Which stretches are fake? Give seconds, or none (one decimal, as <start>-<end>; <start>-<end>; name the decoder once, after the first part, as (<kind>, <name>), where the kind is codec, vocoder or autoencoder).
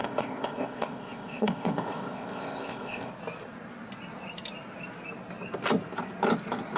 0.0-3.1 (codec, ZipCodec)